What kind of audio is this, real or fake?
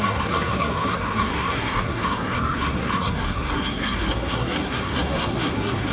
fake